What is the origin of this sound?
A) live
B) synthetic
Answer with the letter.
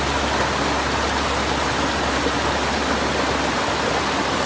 A